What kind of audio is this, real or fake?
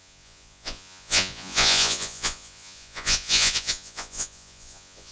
fake